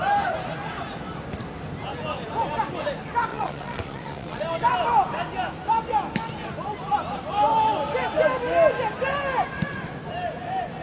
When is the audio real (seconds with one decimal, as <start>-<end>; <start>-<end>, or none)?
0.0-3.3; 4.4-10.8